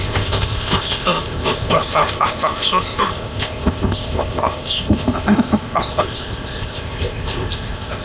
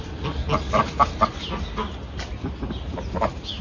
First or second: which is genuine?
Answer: second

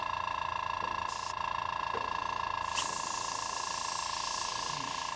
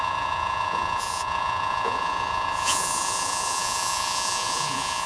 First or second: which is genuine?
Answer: first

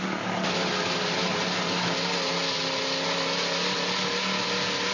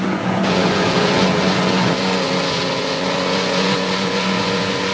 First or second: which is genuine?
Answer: first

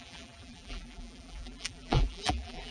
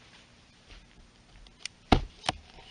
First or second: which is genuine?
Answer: second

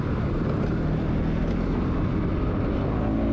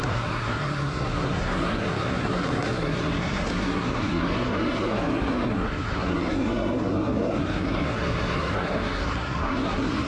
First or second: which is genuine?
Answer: first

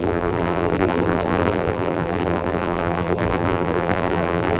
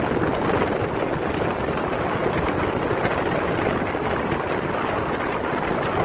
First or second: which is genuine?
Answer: second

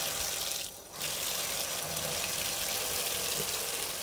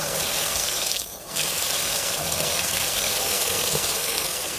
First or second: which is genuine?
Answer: first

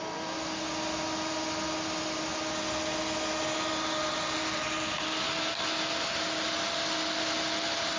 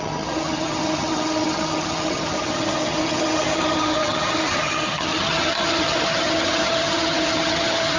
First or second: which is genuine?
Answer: first